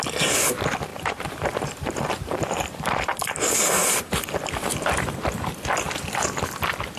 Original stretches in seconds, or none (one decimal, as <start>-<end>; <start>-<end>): 0.0-0.9; 5.1-7.0